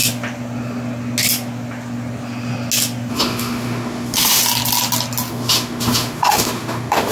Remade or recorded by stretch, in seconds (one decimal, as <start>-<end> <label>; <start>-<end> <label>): 0.0-3.1 recorded; 3.1-4.4 remade; 4.4-5.3 recorded; 5.3-7.1 remade